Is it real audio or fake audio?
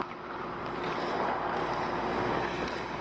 real